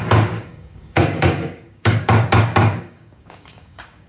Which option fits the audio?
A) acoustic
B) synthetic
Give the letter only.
B